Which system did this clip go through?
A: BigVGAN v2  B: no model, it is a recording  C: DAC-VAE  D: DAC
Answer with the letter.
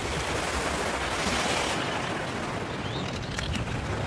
B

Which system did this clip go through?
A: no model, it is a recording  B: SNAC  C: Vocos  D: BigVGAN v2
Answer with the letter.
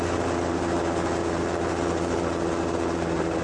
A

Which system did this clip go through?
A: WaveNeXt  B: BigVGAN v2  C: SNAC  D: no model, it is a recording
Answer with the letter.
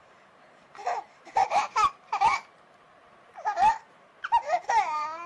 B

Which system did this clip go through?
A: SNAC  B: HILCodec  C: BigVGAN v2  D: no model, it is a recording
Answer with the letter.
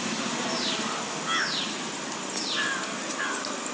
D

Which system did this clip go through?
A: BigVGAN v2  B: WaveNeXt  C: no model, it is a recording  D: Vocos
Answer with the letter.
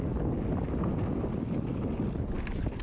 C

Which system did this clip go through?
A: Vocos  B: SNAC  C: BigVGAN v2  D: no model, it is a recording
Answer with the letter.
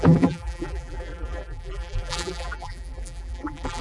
C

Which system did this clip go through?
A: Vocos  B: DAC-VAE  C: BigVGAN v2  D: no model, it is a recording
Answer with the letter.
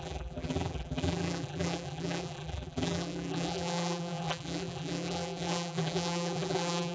C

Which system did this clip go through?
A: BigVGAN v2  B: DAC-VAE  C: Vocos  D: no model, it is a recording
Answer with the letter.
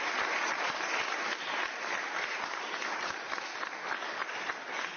D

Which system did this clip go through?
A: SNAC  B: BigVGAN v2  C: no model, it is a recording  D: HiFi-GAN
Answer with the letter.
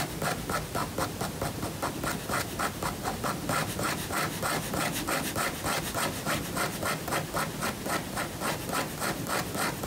C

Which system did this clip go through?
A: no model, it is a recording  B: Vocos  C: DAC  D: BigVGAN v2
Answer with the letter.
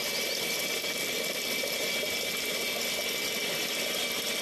D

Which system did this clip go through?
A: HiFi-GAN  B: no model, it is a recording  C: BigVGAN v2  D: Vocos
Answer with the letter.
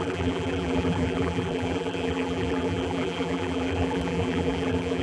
C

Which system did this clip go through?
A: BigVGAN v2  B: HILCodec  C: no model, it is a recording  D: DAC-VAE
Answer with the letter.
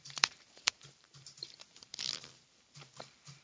A